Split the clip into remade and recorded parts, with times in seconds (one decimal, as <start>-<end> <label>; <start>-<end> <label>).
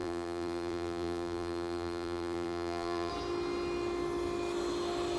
0.0-3.1 remade; 3.1-5.2 recorded